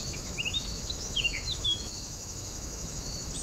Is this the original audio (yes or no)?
no